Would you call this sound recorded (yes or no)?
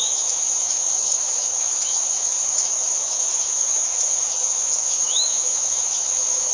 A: no